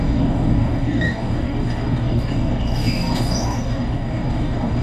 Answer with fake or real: fake